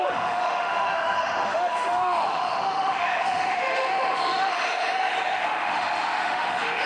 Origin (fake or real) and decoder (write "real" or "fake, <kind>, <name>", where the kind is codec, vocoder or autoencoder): fake, autoencoder, DAC-VAE